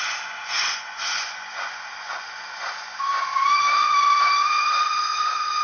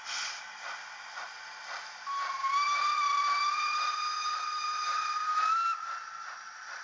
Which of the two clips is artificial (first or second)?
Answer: first